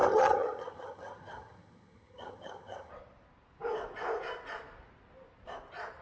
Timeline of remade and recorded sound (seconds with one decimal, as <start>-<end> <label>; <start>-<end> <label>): 0.0-2.9 remade; 2.9-6.0 recorded